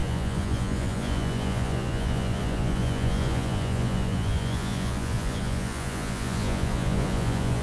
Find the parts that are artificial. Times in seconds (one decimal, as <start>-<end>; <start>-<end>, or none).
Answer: 0.0-7.6